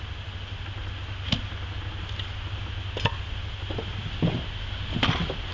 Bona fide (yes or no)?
yes